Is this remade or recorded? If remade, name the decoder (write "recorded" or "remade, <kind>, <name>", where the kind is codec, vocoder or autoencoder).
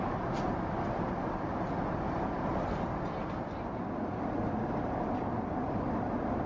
recorded